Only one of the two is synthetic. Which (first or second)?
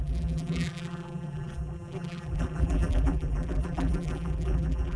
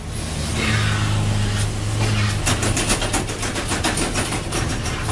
first